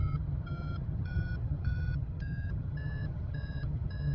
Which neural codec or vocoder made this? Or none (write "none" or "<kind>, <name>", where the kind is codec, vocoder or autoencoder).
vocoder, HiFi-GAN